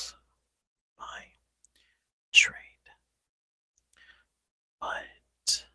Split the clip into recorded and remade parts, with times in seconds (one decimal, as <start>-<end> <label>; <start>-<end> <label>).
0.0-5.7 recorded